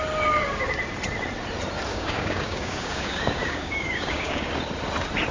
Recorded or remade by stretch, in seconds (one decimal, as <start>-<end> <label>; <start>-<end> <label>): 0.0-1.9 recorded; 1.9-4.5 remade; 4.5-5.3 recorded